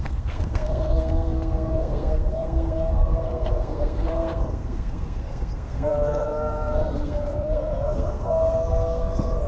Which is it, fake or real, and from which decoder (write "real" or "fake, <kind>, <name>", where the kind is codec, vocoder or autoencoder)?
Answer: fake, codec, SNAC